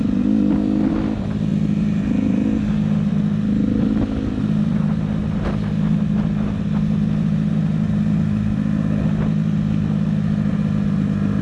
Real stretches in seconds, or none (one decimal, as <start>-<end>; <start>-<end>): 0.0-11.4